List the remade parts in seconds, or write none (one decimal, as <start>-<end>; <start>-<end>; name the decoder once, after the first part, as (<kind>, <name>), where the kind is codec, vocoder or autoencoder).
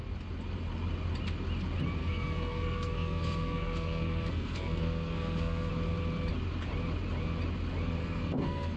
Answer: 2.0-5.7 (codec, SNAC); 8.0-8.8